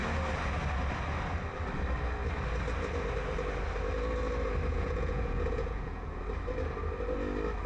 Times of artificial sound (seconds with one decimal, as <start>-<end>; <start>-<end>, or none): 4.7-6.2